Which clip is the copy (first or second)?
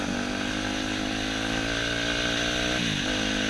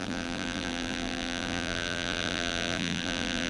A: second